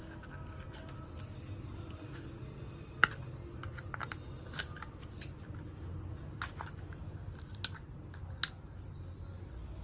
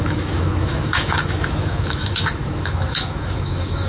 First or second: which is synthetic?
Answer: second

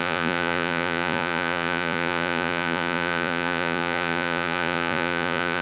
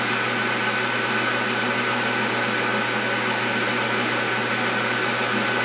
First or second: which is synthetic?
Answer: first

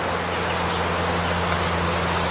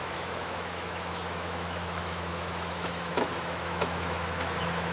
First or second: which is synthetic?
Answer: second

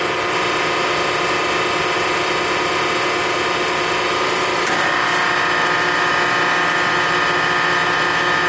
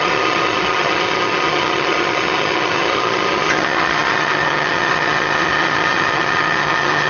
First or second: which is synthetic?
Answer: second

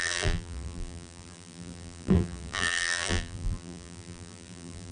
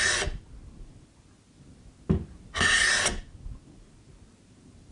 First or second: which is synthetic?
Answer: first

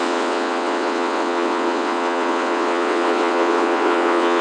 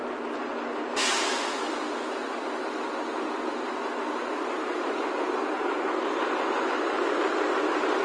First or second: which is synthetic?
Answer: first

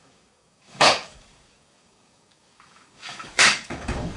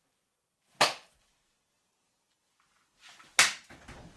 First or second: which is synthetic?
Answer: first